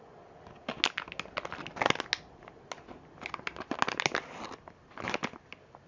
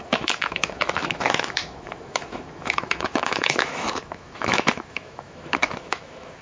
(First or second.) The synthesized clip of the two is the second